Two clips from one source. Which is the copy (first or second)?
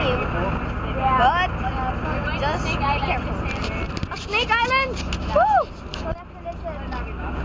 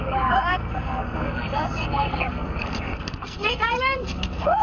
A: second